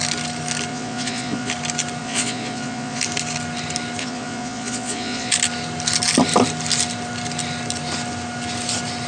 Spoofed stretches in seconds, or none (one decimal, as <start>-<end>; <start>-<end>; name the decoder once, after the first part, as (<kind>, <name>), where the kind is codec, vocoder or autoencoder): 0.7-1.5 (vocoder, Vocos); 2.0-3.0; 4.0-5.3